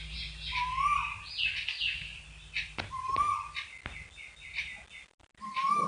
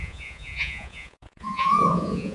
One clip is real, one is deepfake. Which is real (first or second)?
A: first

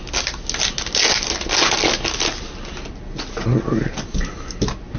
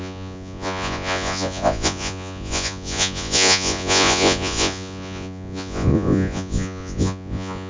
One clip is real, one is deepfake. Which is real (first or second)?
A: first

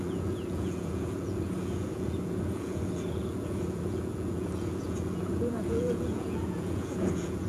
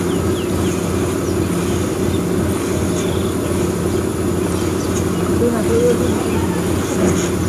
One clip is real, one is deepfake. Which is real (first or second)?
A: second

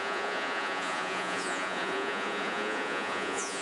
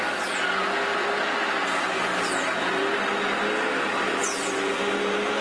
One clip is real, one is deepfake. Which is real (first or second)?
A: second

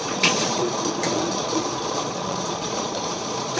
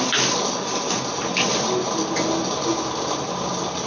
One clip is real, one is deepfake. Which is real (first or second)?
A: second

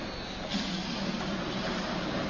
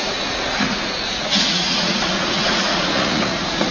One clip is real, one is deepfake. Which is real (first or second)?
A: first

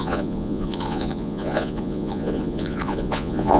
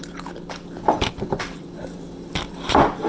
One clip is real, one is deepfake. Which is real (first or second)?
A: second